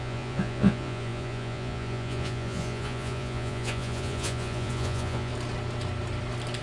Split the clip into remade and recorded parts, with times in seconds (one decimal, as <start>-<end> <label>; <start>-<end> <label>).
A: 0.0-5.3 remade; 5.3-6.6 recorded